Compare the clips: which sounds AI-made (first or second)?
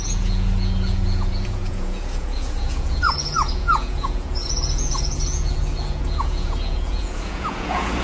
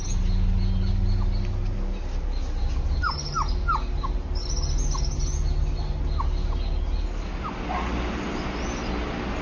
first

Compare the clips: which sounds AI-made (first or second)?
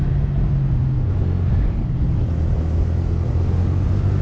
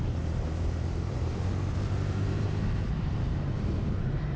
second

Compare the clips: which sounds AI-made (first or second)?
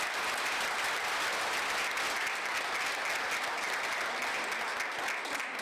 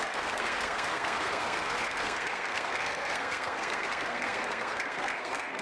second